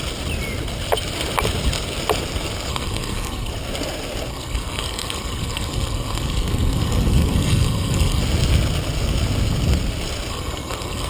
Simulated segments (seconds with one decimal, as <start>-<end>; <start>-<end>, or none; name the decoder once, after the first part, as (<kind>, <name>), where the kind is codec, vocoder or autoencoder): 2.7-3.5 (codec, SNAC); 4.3-8.2; 10.3-11.1